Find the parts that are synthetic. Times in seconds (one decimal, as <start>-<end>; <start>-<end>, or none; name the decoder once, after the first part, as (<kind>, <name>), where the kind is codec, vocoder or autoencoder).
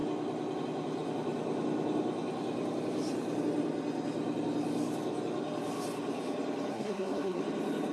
6.7-7.4 (codec, SNAC)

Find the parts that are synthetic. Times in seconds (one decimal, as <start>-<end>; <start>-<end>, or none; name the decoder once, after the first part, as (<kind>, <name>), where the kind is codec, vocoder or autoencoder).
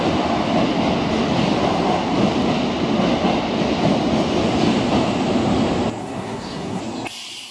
6.0-6.8 (codec, SNAC)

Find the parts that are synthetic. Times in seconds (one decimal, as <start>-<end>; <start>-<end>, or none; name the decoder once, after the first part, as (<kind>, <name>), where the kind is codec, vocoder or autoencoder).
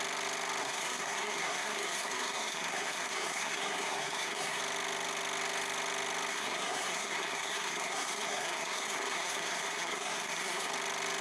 0.6-4.6 (codec, SNAC); 6.3-10.7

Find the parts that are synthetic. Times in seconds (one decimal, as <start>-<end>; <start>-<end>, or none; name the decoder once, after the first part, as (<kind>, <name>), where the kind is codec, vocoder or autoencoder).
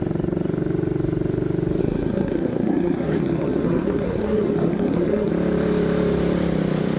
1.8-5.3 (codec, SNAC)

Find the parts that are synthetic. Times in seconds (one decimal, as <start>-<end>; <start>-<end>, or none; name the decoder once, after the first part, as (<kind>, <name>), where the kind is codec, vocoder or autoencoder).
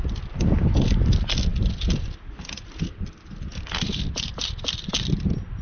none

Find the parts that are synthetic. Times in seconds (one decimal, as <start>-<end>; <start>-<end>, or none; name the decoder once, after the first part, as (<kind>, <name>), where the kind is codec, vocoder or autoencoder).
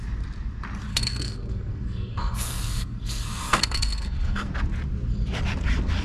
0.9-4.5 (codec, SNAC)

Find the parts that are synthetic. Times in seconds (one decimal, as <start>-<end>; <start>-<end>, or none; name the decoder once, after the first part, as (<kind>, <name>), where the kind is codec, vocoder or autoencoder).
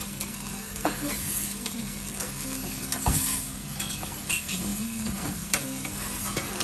0.0-6.6 (codec, SNAC)